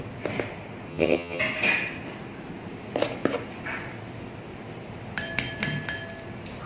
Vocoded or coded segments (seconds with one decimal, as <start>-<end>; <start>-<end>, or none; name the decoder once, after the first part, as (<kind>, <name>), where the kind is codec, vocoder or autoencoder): 0.9-1.4 (vocoder, HiFi-GAN)